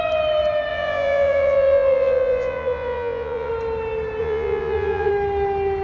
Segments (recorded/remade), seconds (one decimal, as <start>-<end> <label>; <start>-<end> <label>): 0.0-0.7 recorded; 0.7-3.5 remade; 3.5-4.2 recorded; 4.2-5.1 remade; 5.1-5.8 recorded